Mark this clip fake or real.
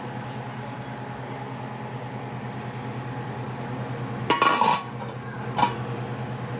real